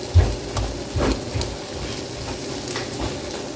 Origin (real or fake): real